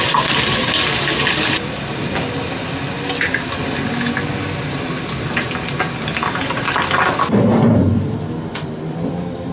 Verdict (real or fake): real